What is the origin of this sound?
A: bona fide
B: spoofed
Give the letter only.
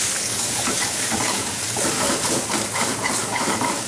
B